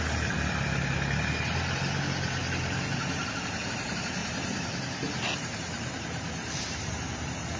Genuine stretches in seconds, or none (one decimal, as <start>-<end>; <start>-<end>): 0.0-4.2